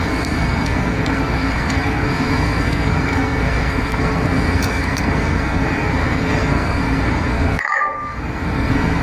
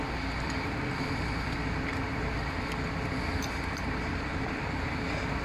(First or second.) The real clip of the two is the second